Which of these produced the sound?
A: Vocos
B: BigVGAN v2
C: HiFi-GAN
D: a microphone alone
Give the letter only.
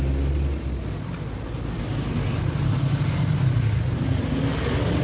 D